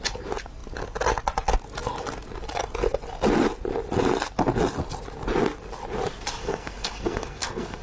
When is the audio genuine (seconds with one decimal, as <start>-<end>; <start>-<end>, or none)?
0.0-6.4